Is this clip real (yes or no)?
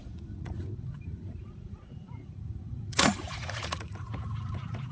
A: no